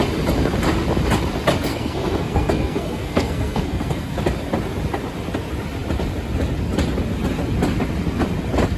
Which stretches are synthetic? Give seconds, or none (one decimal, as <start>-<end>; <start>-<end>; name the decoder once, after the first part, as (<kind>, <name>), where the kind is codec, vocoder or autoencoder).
1.7-4.2 (codec, SNAC)